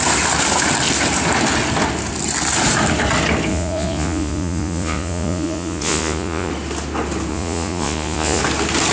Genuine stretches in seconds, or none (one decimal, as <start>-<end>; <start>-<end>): 0.0-3.5; 6.5-7.3; 8.4-8.9